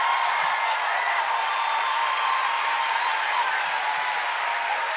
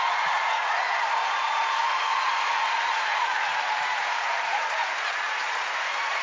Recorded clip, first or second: first